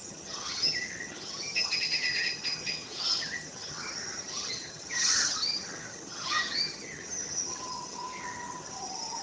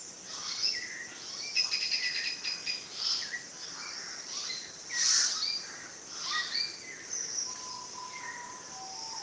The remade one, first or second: first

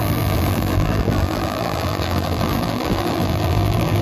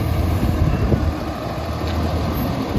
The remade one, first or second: first